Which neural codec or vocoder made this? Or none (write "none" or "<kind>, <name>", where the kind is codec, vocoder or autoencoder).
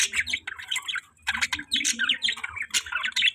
none